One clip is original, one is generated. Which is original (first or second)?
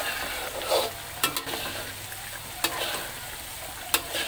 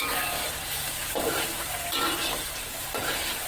first